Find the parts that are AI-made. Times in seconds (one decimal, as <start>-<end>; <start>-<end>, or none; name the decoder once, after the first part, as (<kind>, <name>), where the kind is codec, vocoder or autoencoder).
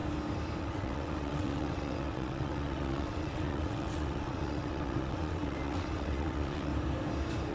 0.6-6.7 (vocoder, WaveNeXt)